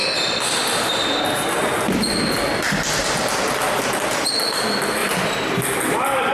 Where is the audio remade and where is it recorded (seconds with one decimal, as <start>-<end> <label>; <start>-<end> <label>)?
0.0-5.0 recorded; 5.0-6.3 remade